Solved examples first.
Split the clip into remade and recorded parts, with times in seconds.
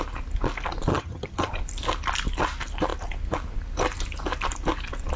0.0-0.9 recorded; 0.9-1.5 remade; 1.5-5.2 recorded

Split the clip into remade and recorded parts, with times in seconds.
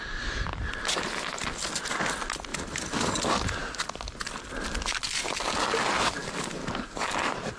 0.0-6.2 recorded; 6.2-7.1 remade; 7.1-7.6 recorded